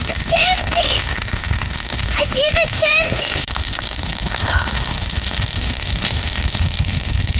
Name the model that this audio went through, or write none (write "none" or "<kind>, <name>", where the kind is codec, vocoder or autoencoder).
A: autoencoder, DAC-VAE